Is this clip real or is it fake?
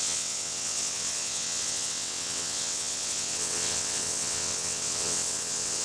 fake